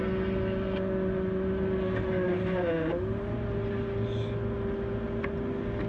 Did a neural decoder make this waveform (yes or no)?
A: no